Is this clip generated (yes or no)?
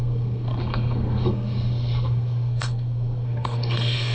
yes